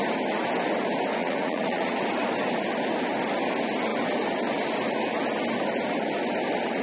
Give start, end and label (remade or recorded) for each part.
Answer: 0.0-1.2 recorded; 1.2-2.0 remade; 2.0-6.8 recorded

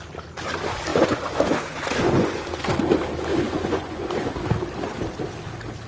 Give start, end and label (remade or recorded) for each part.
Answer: 0.0-0.9 recorded; 0.9-2.4 remade; 2.4-3.3 recorded; 3.3-4.3 remade; 4.3-5.9 recorded

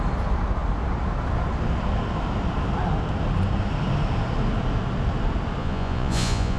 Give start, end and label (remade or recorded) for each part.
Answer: 0.0-5.6 recorded; 5.6-6.6 remade